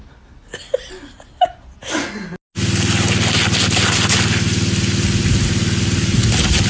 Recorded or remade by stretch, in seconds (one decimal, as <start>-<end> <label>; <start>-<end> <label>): 0.0-6.7 recorded